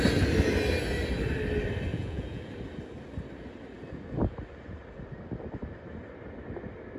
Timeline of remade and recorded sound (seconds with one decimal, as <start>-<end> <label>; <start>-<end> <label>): 0.0-1.9 recorded; 1.9-2.5 remade; 2.5-7.0 recorded